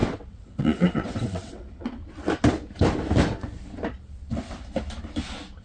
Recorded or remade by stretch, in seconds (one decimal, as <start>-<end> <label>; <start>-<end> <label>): 0.0-2.0 remade; 2.0-5.6 recorded